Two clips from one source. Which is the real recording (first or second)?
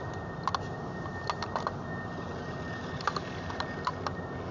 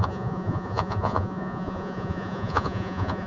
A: first